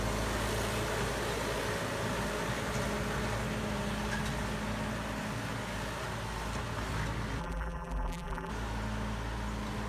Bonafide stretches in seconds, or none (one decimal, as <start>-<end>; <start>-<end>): 0.0-7.4; 8.5-9.9